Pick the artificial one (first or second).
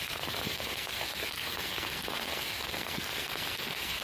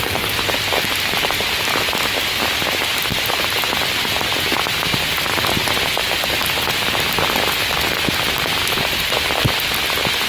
first